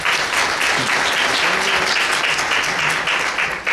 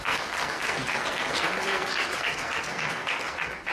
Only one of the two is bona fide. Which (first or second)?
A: first